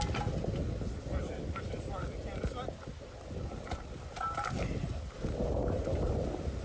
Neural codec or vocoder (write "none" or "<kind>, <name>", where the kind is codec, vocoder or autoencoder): none